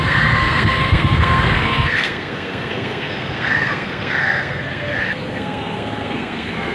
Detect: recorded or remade remade